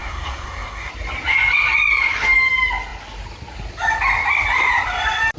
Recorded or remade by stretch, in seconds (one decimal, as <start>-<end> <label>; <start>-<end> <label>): 0.0-0.9 remade; 0.9-5.4 recorded